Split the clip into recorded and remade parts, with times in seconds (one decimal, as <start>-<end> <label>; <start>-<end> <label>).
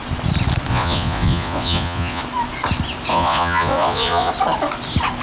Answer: 0.0-0.7 recorded; 0.7-2.2 remade; 2.2-3.1 recorded; 3.1-4.3 remade; 4.3-5.2 recorded